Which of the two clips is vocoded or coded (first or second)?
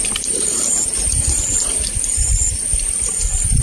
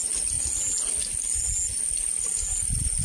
first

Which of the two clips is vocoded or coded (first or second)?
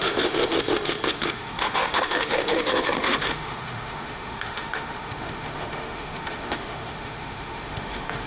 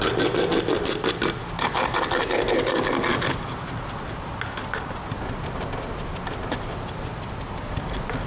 first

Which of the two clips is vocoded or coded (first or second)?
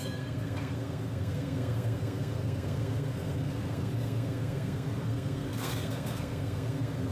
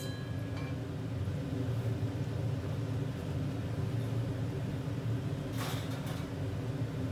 first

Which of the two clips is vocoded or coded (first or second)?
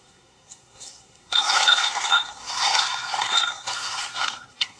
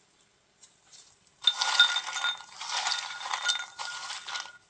first